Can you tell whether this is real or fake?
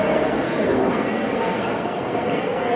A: fake